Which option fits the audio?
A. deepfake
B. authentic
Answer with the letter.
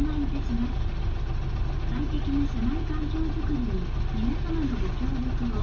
B